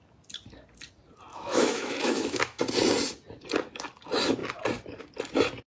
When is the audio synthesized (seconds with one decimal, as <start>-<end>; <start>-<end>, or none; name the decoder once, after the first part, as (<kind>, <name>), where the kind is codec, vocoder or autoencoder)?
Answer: 1.3-2.6 (autoencoder, DAC-VAE)